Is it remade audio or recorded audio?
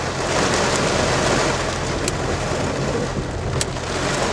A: recorded